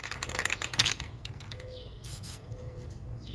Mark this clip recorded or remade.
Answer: remade